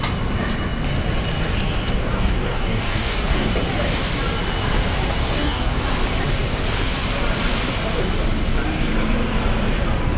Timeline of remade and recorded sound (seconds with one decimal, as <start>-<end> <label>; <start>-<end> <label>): 0.0-2.0 recorded; 2.0-3.5 remade; 3.5-5.2 recorded; 5.2-5.8 remade; 5.8-10.2 recorded